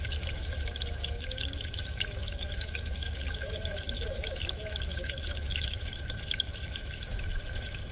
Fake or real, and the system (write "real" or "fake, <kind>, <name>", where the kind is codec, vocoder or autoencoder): fake, autoencoder, DAC-VAE